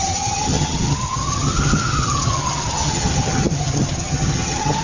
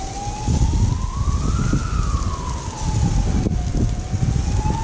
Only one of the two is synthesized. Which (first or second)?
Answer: first